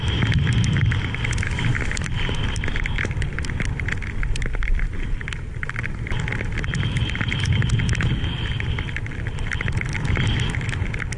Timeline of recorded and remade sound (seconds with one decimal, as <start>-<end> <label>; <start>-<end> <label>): 0.0-11.2 recorded